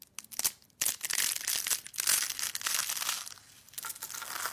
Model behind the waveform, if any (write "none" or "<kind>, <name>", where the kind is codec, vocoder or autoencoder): none